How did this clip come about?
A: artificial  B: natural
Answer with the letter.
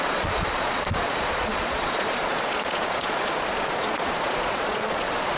A